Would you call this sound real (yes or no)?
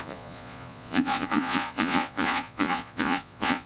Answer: no